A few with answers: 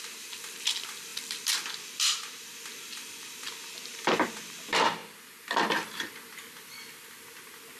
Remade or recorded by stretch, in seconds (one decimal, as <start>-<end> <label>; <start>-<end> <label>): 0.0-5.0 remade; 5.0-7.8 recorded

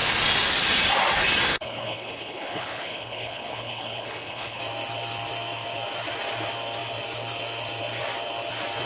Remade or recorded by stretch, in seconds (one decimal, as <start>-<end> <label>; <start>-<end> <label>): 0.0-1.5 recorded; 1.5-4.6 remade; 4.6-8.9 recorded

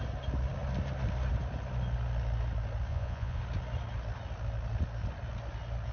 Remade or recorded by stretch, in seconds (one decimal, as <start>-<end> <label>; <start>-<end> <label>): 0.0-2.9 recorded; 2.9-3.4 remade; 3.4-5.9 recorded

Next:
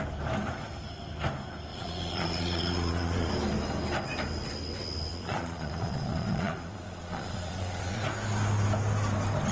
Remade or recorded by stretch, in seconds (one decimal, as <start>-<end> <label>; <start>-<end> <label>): 0.0-1.7 recorded; 1.7-3.3 remade; 3.3-5.1 recorded; 5.1-8.0 remade; 8.0-9.5 recorded

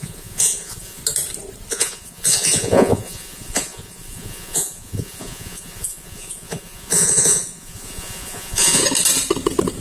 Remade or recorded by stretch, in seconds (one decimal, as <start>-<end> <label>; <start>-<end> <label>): 0.0-1.0 remade; 1.0-1.7 recorded; 1.7-8.8 remade; 8.8-9.8 recorded

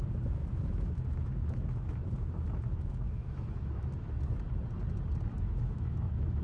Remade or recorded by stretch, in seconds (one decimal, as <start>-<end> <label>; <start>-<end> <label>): 0.0-0.4 recorded; 0.4-4.2 remade; 4.2-5.3 recorded; 5.3-6.4 remade

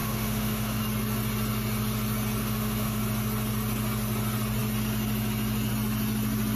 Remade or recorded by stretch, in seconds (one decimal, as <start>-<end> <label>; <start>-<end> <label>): 0.0-0.8 remade; 0.8-2.4 recorded; 2.4-3.0 remade; 3.0-6.6 recorded

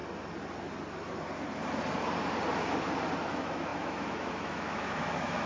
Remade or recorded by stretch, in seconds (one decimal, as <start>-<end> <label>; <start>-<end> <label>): 0.0-3.3 recorded; 3.3-5.5 remade